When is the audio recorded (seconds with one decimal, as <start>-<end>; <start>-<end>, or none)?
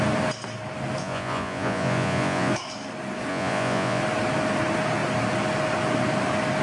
0.0-1.0; 2.5-3.3; 4.0-6.6